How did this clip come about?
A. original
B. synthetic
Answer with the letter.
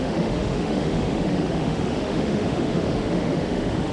B